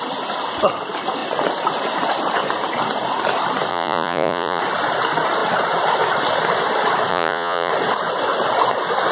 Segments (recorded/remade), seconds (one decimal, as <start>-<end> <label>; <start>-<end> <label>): 0.0-3.7 recorded; 3.7-4.6 remade; 4.6-7.1 recorded; 7.1-7.7 remade; 7.7-9.1 recorded